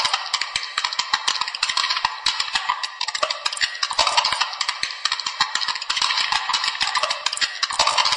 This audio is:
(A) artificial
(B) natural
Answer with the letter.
B